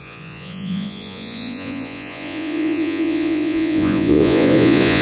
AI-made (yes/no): yes